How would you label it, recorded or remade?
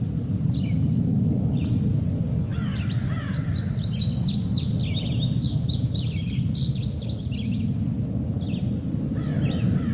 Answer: recorded